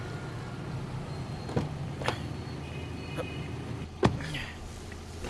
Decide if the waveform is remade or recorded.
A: recorded